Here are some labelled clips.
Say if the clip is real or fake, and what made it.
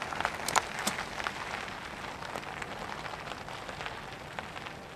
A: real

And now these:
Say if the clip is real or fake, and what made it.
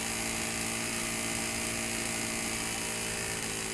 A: real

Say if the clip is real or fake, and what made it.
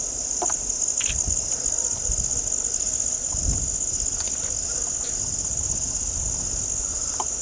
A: real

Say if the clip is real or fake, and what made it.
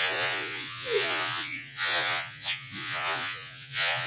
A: fake, vocoder, Vocos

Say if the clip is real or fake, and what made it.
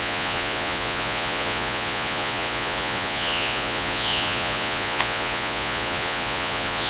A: fake, vocoder, Vocos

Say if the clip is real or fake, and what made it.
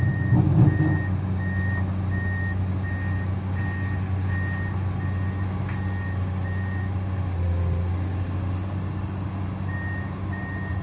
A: real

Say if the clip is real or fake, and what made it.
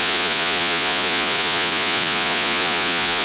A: fake, vocoder, Vocos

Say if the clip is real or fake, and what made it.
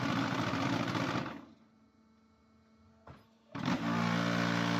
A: real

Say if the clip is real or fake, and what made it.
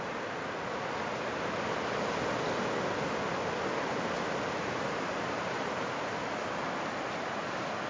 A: real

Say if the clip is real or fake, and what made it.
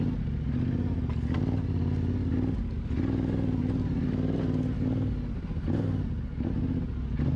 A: real